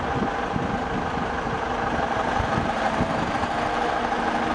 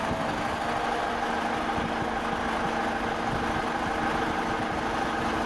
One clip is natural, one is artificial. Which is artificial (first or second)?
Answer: first